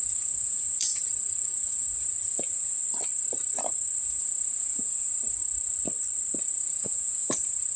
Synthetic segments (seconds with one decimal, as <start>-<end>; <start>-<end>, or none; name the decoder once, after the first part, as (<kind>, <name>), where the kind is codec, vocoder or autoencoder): 0.0-2.8 (vocoder, Vocos); 4.0-5.4; 6.4-7.8